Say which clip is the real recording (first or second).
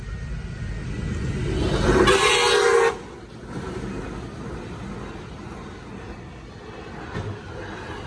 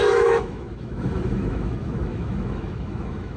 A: first